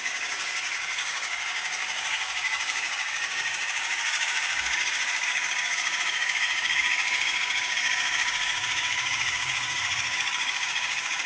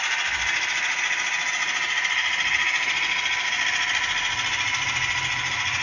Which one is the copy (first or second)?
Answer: first